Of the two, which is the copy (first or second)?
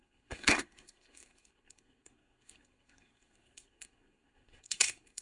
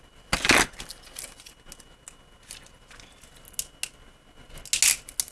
first